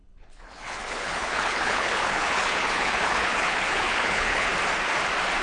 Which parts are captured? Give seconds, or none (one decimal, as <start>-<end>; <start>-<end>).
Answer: 4.5-5.4